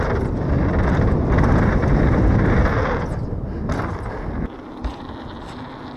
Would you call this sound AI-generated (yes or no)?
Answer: no